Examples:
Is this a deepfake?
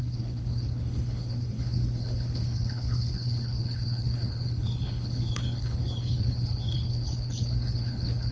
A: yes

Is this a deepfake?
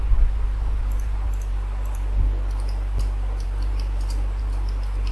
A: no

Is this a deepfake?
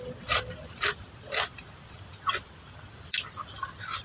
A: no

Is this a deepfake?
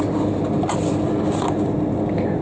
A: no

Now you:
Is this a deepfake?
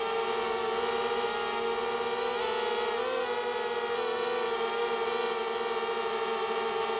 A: no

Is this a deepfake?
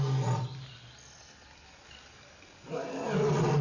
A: no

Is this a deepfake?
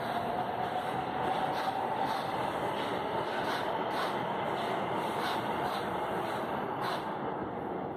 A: no